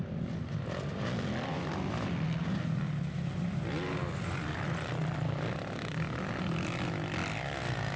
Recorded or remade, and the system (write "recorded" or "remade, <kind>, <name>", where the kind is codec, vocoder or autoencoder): recorded